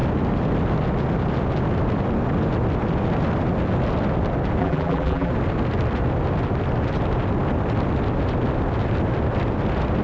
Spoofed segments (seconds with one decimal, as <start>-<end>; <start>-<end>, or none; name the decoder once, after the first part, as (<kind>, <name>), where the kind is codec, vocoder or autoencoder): 4.6-5.3 (vocoder, BigVGAN v2)